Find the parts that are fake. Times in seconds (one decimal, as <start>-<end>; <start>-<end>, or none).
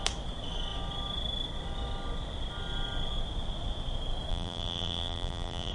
4.3-5.7